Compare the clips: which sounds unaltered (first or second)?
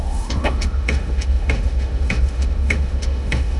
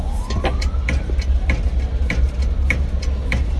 second